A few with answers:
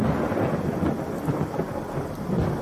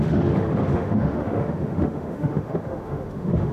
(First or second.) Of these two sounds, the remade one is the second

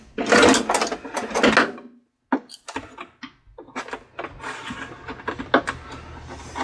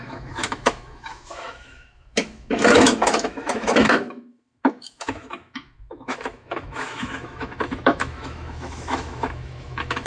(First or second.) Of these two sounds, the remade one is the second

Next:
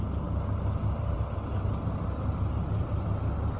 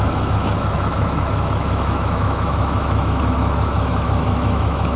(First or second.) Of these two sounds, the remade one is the second